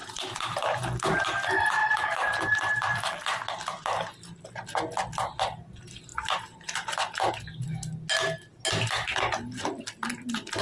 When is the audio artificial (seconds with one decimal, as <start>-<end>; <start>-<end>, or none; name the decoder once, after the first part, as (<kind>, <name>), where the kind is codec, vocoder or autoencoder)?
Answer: 0.0-0.8 (vocoder, BigVGAN v2); 6.1-7.3